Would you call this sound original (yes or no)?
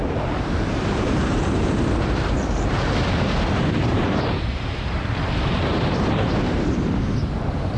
no